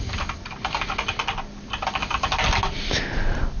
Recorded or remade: recorded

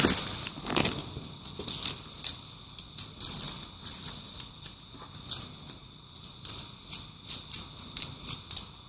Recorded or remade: recorded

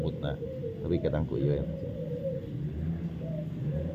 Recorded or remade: recorded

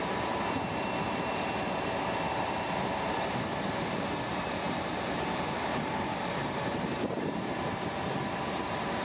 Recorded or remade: remade